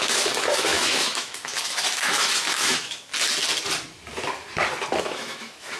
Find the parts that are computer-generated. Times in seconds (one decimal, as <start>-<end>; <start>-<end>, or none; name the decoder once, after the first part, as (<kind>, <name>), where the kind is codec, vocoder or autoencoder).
0.0-3.1 (autoencoder, DAC-VAE); 5.0-5.8